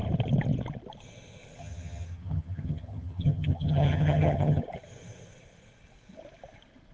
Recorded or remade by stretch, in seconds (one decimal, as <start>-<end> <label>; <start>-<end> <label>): 0.0-1.6 recorded; 1.6-4.6 remade; 4.6-6.9 recorded

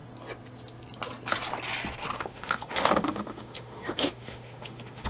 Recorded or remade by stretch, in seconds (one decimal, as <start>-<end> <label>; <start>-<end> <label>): 0.0-2.2 recorded; 2.2-5.1 remade

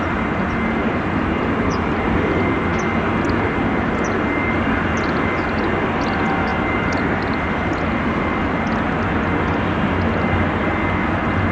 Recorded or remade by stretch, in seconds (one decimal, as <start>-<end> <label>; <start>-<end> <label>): 0.0-11.5 recorded

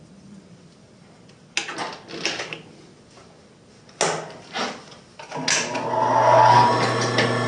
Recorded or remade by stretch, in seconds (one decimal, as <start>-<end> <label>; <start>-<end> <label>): 0.0-7.5 recorded

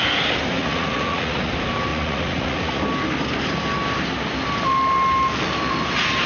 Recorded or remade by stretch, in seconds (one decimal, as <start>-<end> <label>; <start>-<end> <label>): 0.0-0.6 recorded; 0.6-1.5 remade; 1.5-1.9 recorded; 1.9-2.8 remade; 2.8-6.3 recorded